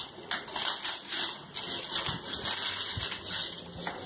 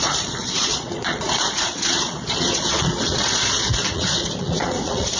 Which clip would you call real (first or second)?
first